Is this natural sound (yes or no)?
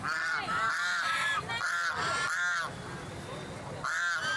yes